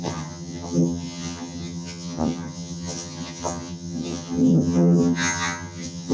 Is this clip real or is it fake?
fake